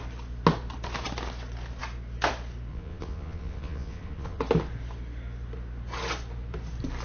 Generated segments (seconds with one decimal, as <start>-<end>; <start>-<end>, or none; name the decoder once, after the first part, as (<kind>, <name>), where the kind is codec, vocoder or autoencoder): 2.7-4.4 (vocoder, Vocos)